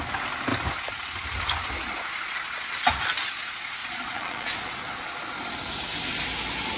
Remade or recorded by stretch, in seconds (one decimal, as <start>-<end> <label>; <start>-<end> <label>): 0.0-3.8 recorded; 3.8-4.5 remade; 4.5-6.8 recorded